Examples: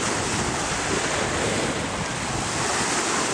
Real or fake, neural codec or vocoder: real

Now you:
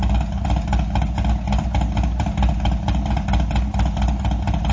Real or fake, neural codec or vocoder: real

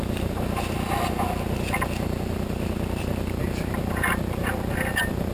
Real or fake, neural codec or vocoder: real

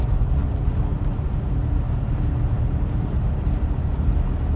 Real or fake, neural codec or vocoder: real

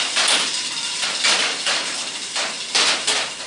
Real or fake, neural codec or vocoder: real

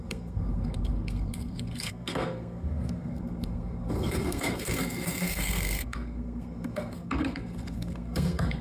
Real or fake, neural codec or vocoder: fake, codec, SNAC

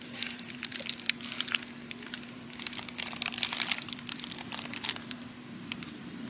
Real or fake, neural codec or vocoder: fake, vocoder, BigVGAN v2